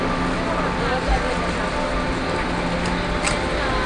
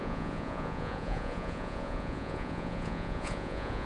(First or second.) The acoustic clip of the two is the first